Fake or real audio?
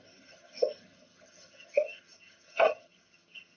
fake